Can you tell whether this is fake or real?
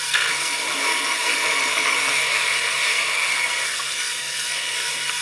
fake